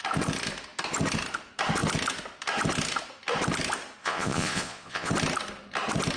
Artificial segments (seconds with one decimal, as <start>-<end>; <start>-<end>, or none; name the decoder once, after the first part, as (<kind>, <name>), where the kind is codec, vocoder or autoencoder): 4.0-5.1 (vocoder, Vocos)